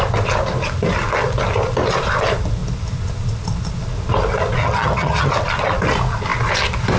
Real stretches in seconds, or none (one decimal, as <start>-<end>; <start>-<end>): 0.0-4.6; 5.3-7.0